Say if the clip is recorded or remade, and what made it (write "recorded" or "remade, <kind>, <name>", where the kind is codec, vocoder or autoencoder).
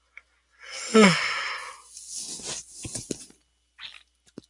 recorded